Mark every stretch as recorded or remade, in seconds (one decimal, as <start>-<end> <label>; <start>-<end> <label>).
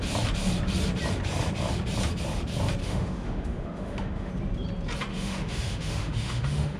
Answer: 0.0-2.8 recorded; 2.8-4.3 remade; 4.3-5.1 recorded; 5.1-6.8 remade